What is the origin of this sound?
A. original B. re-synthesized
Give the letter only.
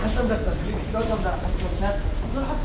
A